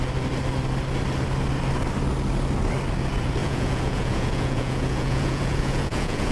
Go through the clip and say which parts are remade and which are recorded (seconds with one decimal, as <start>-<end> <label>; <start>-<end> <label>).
0.0-3.4 recorded; 3.4-6.3 remade